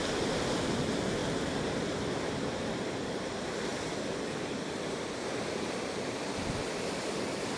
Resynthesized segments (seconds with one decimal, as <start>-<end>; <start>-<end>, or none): 0.0-7.6